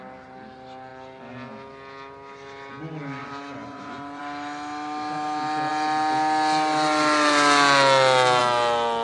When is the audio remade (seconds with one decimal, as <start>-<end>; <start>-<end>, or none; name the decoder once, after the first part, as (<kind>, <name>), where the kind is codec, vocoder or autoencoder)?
3.2-4.2 (vocoder, Vocos)